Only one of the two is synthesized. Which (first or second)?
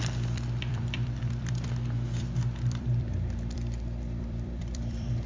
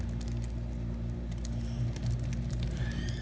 first